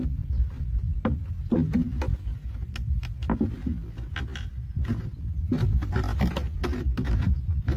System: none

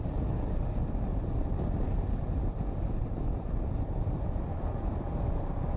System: none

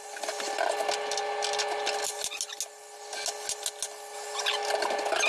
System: none